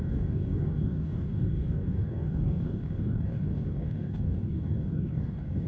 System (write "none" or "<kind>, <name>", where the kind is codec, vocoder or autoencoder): codec, DAC